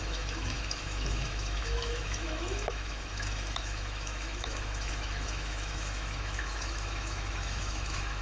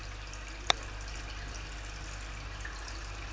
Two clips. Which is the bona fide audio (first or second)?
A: second